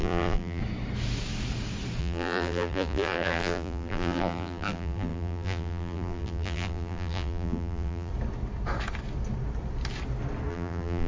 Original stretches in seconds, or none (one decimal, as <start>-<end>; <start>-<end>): 0.6-2.0; 8.1-10.5